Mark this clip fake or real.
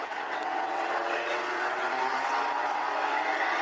fake